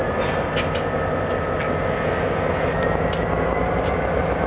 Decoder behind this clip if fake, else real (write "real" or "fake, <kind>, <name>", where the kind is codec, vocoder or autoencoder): real